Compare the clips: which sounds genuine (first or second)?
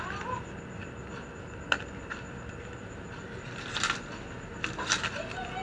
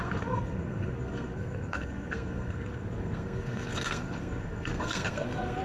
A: first